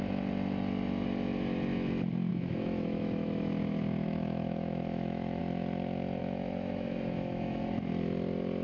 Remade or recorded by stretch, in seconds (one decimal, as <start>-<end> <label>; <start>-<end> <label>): 0.0-2.3 recorded; 2.3-5.4 remade; 5.4-6.2 recorded; 6.2-7.6 remade; 7.6-8.6 recorded